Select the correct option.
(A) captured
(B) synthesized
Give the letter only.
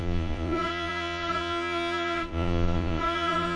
B